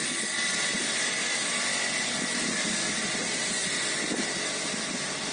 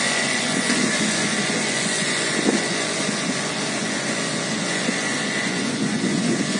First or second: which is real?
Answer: first